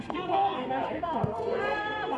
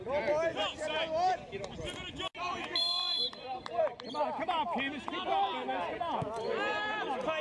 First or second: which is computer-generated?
first